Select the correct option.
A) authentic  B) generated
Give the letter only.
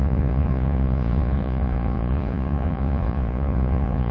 B